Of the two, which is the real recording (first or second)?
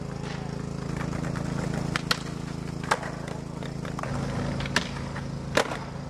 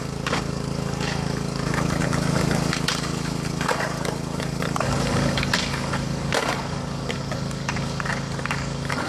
first